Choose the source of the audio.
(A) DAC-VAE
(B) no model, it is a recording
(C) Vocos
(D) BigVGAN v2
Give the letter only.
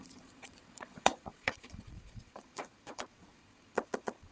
C